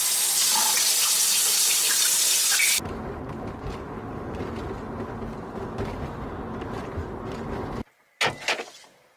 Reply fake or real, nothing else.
real